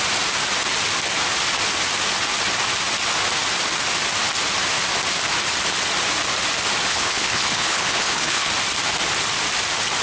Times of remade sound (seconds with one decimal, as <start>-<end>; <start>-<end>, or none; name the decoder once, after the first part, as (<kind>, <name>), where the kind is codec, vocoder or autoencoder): 6.9-8.5 (codec, HILCodec)